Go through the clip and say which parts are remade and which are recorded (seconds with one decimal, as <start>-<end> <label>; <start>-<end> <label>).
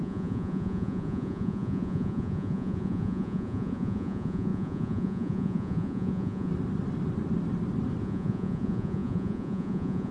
0.0-6.5 remade; 6.5-8.0 recorded; 8.0-10.1 remade